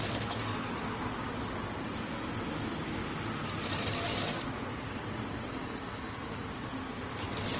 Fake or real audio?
real